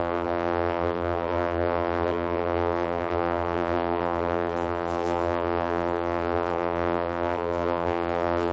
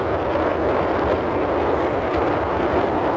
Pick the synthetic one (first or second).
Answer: first